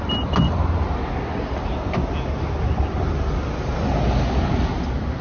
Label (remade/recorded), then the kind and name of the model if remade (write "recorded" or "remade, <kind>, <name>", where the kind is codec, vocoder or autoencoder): recorded